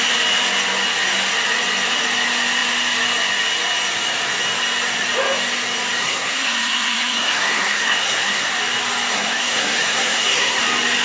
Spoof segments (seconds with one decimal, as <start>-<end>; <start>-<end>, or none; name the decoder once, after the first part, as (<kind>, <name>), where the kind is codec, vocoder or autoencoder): 6.0-8.5 (codec, SNAC); 9.1-10.6